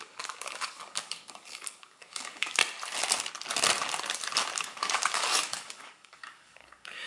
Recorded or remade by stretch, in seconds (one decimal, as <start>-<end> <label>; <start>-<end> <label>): 0.0-2.6 remade; 2.6-4.6 recorded; 4.6-7.1 remade